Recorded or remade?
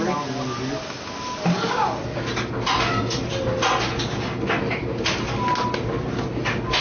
recorded